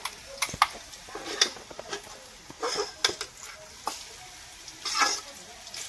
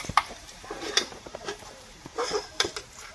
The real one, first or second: first